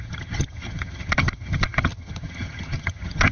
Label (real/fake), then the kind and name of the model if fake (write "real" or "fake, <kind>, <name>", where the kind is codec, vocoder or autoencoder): fake, vocoder, HiFi-GAN